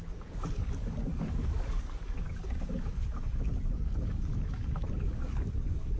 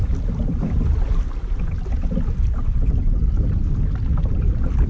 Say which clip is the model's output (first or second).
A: first